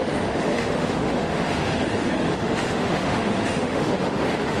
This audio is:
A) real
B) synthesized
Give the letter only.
B